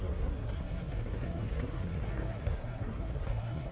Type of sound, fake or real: fake